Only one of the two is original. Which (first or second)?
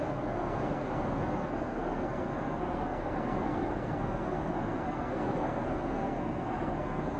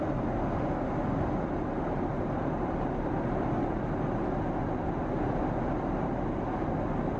second